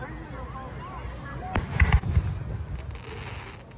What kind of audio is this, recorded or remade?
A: recorded